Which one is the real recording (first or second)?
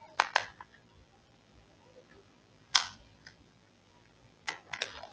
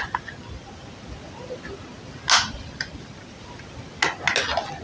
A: second